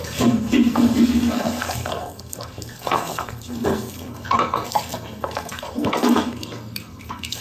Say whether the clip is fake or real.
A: fake